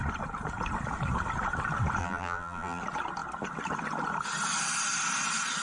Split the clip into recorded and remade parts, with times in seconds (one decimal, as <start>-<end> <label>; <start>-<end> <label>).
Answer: 0.0-2.0 recorded; 2.0-2.8 remade; 2.8-5.6 recorded